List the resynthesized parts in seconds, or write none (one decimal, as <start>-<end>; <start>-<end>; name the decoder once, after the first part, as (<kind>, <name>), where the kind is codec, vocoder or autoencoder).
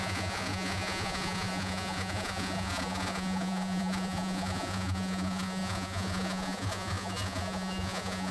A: 0.0-8.3 (vocoder, Vocos)